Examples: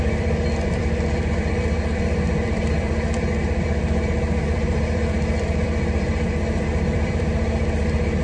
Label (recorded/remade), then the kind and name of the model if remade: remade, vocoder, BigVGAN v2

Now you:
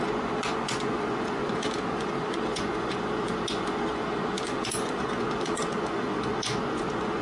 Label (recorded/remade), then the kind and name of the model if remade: remade, vocoder, Vocos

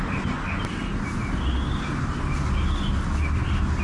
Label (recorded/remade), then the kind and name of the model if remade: recorded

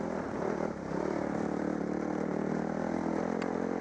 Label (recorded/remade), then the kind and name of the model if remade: remade, vocoder, BigVGAN v2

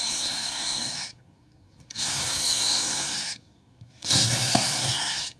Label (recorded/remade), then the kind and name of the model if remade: remade, codec, SNAC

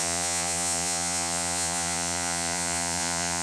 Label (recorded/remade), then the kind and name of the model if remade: remade, vocoder, Vocos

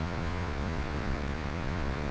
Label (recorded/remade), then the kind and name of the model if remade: remade, vocoder, Vocos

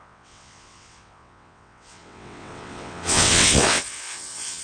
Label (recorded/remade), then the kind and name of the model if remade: remade, vocoder, WaveNeXt